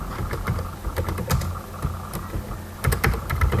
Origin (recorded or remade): recorded